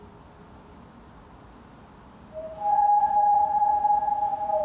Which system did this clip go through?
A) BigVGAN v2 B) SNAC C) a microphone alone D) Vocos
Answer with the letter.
C